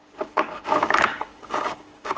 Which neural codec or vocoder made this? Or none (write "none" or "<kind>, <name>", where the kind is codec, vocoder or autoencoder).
codec, DAC